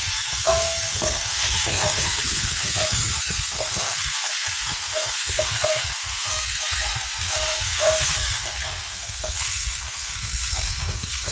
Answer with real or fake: fake